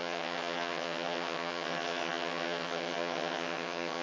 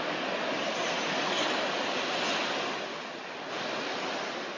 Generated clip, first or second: first